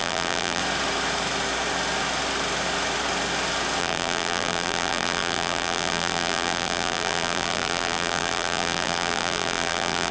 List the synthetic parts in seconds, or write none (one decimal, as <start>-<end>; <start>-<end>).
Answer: 0.0-0.6; 3.8-10.1